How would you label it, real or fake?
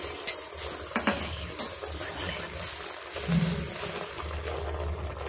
real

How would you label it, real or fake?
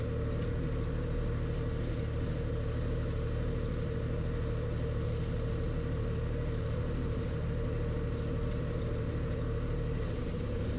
real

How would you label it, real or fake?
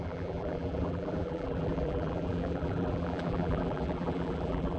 fake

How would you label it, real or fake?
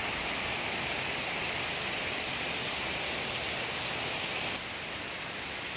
real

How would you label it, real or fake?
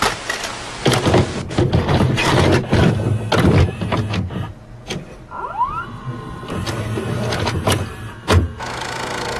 real